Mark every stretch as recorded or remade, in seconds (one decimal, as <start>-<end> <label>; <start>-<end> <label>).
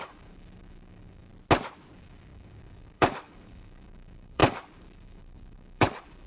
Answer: 0.0-1.3 remade; 1.3-1.9 recorded; 1.9-6.3 remade